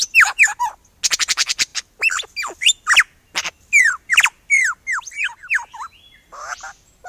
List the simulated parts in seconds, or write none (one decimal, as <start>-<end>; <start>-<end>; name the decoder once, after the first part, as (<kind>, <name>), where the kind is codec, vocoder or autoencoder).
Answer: none